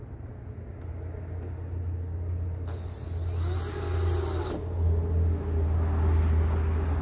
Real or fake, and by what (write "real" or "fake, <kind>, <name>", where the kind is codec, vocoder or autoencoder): real